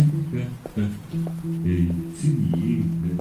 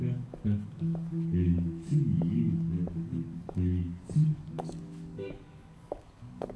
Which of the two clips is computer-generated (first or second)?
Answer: second